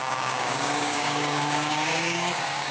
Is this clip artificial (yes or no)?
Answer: yes